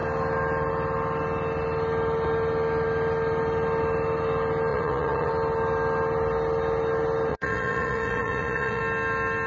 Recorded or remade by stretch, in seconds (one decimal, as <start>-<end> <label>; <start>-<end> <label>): 0.0-4.7 recorded; 4.7-5.3 remade; 5.3-7.3 recorded; 7.3-8.8 remade; 8.8-9.5 recorded

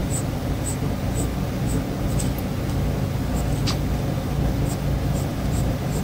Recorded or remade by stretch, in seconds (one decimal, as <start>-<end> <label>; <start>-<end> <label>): 0.0-0.6 remade; 0.6-5.3 recorded; 5.3-6.0 remade

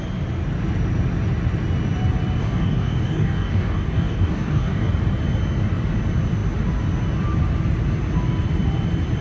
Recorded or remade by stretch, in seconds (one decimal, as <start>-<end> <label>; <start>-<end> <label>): 0.0-2.4 recorded; 2.4-4.9 remade; 4.9-9.2 recorded

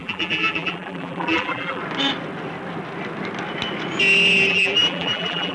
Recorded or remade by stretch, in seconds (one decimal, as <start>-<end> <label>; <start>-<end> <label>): 0.0-1.8 remade; 1.8-4.5 recorded; 4.5-5.5 remade

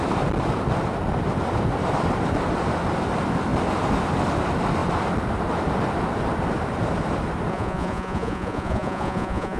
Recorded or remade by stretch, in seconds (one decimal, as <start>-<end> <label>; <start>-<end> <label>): 0.0-7.5 recorded; 7.5-9.6 remade